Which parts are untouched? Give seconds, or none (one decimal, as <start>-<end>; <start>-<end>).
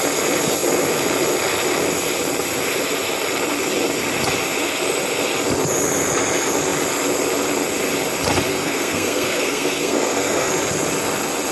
0.0-8.5; 10.5-11.5